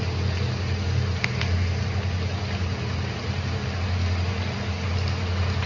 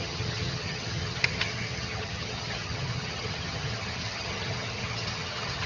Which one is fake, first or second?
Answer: second